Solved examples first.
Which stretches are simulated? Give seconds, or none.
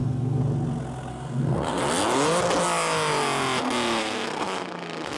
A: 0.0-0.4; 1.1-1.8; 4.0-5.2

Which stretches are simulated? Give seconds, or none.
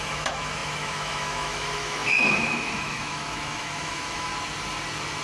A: 0.0-4.3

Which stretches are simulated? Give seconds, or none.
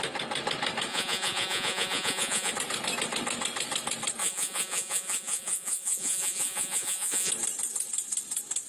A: 0.9-2.5; 4.2-7.3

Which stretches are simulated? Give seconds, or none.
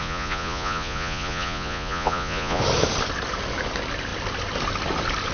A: 0.0-2.6